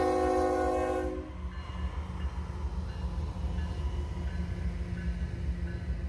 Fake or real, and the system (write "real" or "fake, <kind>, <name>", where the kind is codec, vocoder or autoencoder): real